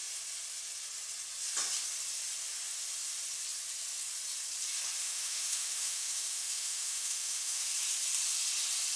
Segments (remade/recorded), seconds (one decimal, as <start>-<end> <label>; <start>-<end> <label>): 0.0-5.0 recorded; 5.0-7.7 remade; 7.7-9.0 recorded